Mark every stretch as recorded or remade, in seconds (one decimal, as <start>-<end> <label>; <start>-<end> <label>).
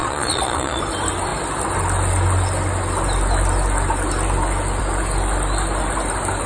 0.0-0.8 remade; 0.8-6.5 recorded